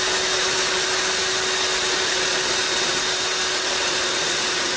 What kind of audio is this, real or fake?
real